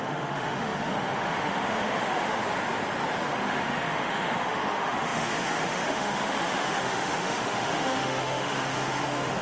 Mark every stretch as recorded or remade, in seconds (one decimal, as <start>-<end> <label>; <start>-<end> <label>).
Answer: 0.0-2.4 remade; 2.4-3.2 recorded; 3.2-9.4 remade